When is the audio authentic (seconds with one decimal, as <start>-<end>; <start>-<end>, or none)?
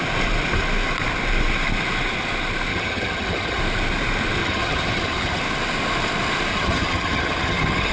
0.0-2.7; 3.6-4.4; 5.4-6.5